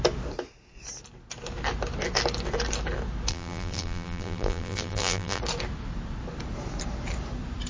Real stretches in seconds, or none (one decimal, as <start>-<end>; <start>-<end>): 0.0-3.3; 5.4-7.7